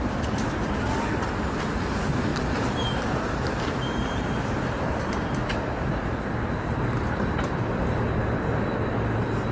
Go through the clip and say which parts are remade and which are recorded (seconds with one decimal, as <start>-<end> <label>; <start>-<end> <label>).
0.0-2.3 recorded; 2.3-7.0 remade; 7.0-9.5 recorded